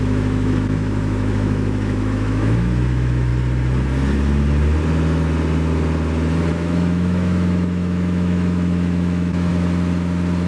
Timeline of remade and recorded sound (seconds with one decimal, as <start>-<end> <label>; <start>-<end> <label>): 0.0-3.3 remade; 3.3-6.5 recorded; 6.5-9.5 remade; 9.5-10.5 recorded